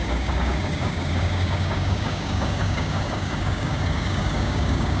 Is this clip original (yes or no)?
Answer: no